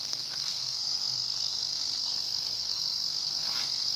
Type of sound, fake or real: fake